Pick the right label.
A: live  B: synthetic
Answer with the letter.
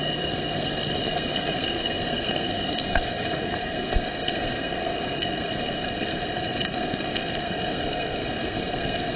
B